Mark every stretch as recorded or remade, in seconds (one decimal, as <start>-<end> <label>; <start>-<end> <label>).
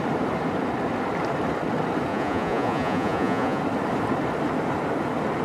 0.0-2.1 recorded; 2.1-3.6 remade; 3.6-5.4 recorded